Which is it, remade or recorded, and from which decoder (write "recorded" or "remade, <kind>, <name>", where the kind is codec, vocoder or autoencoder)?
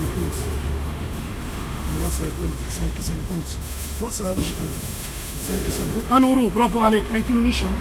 remade, autoencoder, DAC-VAE